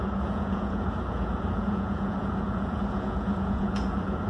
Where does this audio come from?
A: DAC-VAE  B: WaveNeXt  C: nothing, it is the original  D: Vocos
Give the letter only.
D